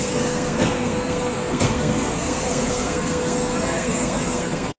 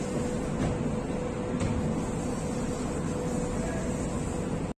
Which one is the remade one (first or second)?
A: first